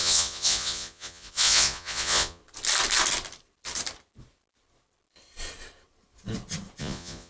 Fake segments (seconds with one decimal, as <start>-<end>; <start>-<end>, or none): 0.0-2.4; 6.8-7.3

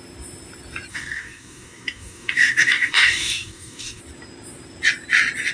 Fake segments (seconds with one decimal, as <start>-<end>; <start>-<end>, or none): 0.9-4.0

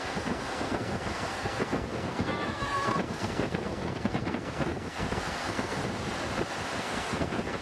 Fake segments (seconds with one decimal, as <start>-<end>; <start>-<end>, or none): 0.0-5.8; 6.8-7.6

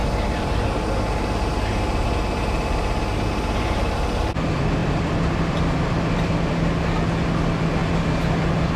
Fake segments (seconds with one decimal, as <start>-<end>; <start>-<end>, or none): 0.0-0.6; 4.8-5.4; 7.8-8.8

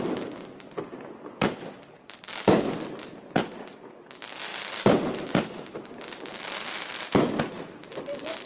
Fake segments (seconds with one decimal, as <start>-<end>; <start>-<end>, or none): none